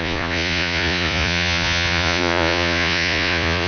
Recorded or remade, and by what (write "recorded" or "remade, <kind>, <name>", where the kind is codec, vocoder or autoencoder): remade, vocoder, Vocos